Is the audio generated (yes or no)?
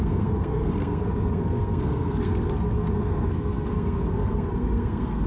yes